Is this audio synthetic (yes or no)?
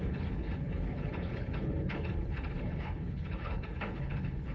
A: yes